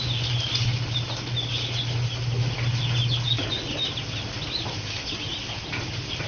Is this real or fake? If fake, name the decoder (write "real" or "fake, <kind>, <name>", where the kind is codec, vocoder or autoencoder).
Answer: real